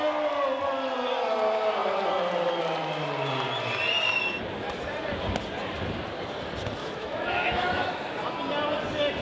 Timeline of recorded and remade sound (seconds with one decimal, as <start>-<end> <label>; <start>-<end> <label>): 0.0-6.8 recorded; 6.8-7.9 remade; 7.9-9.2 recorded